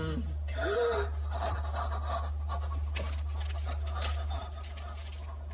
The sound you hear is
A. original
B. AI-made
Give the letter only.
A